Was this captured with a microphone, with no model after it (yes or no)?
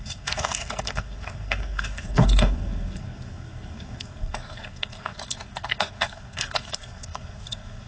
no